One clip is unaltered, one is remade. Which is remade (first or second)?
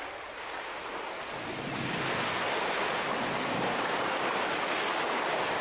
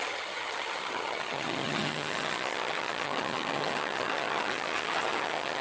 second